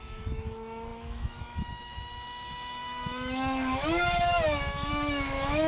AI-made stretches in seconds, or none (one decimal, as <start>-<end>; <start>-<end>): 0.0-5.7

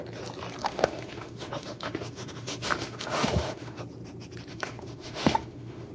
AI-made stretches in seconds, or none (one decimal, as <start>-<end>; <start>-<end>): 0.6-3.8; 4.5-5.9